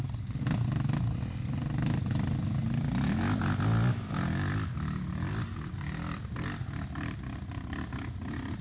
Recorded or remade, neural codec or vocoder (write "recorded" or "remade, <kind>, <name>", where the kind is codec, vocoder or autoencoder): recorded